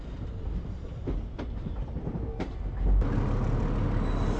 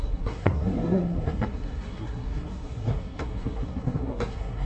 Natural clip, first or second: first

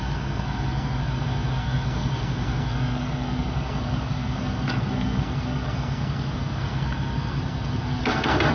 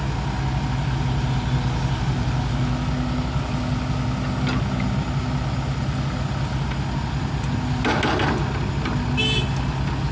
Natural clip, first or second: second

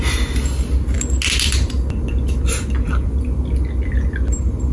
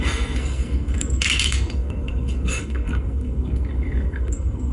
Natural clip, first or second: first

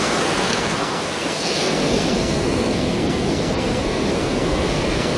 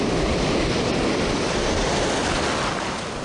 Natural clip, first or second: second